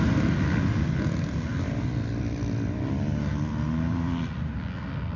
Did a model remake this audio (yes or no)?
no